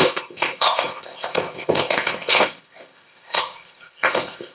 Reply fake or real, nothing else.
fake